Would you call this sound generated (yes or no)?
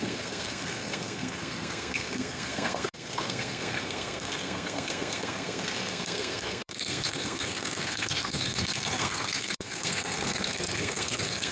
yes